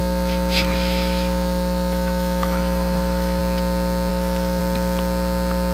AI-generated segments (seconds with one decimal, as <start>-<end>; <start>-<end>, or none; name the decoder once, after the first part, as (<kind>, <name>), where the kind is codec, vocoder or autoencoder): 0.0-3.4 (autoencoder, DAC-VAE); 4.1-4.6